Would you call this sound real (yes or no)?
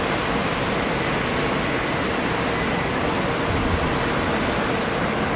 yes